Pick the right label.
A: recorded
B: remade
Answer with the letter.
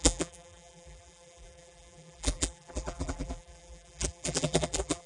B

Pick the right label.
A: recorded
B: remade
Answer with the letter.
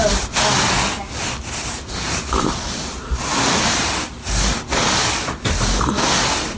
A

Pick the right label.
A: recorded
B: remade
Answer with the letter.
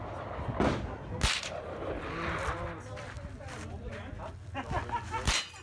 A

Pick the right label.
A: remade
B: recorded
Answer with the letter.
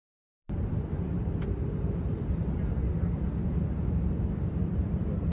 A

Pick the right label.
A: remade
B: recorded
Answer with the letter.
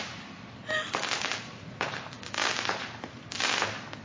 A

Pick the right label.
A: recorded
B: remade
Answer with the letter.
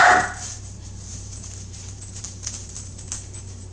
B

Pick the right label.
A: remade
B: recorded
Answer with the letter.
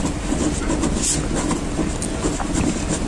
B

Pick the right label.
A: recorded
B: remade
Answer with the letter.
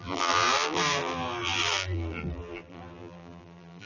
B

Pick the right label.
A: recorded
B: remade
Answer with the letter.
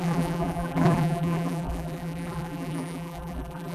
B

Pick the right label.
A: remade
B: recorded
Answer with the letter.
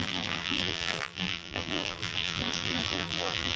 A